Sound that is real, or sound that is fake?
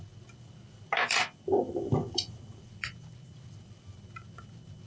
fake